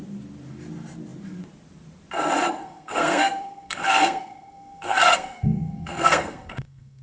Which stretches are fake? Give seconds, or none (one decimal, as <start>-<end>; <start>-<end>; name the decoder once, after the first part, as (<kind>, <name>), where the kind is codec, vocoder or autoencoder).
2.6-7.0 (codec, SNAC)